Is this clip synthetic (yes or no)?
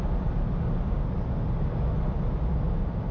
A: no